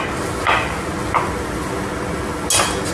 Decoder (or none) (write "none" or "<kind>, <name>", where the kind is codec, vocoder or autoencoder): none